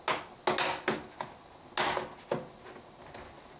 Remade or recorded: recorded